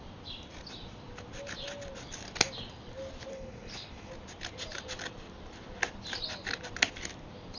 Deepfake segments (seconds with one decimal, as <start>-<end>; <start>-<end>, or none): 3.3-4.1